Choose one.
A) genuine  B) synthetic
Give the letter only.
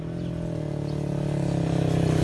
A